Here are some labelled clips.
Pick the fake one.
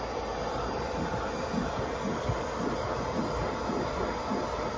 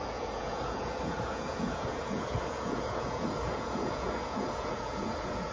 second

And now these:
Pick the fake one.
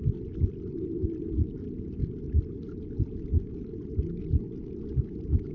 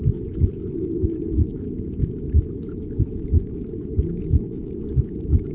second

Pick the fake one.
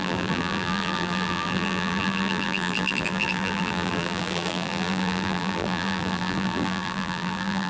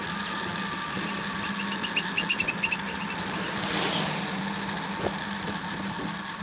first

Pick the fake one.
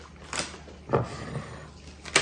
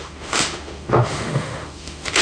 second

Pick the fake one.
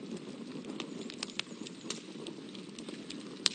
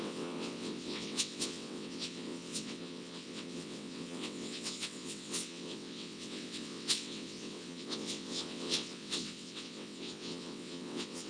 second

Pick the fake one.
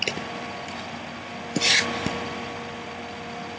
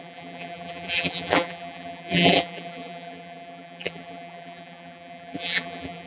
second